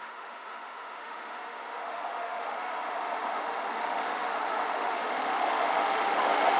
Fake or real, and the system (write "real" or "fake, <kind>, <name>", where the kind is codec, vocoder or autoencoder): fake, autoencoder, DAC-VAE